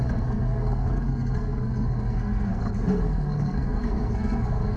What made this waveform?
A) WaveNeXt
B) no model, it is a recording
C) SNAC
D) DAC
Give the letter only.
C